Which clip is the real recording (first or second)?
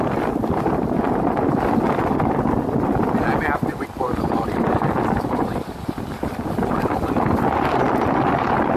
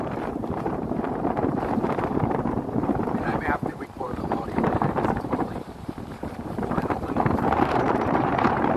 first